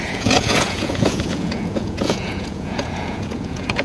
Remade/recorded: remade